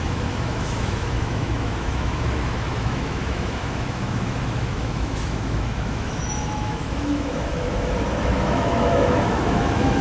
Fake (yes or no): yes